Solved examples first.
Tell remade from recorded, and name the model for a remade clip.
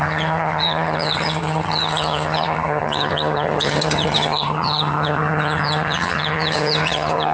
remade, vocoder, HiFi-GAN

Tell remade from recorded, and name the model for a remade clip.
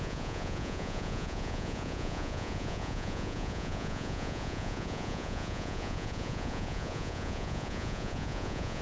remade, vocoder, Vocos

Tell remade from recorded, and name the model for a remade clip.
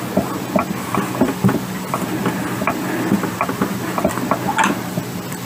recorded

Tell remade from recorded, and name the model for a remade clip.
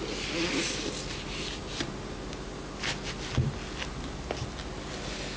recorded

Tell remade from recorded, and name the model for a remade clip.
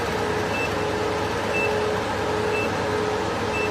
recorded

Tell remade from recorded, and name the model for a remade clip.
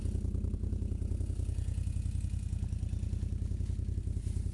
recorded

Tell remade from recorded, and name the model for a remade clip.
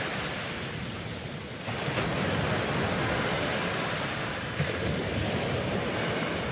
recorded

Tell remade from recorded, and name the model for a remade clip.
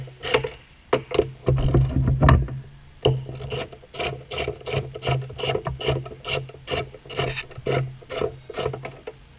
recorded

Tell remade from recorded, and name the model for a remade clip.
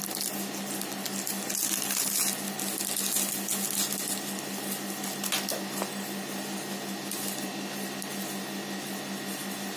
recorded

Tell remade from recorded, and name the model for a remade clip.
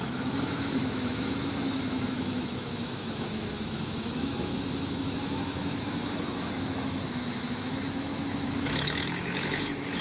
remade, autoencoder, DAC-VAE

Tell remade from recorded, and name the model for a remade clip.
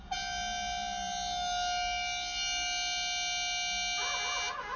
recorded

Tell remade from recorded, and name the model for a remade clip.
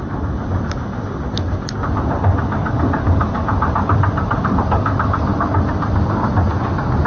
recorded